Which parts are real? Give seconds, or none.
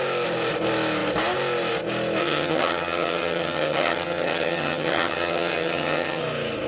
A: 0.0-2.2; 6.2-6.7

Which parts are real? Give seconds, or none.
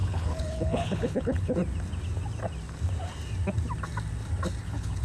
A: 1.6-4.6